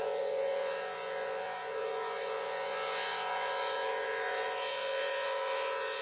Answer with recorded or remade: remade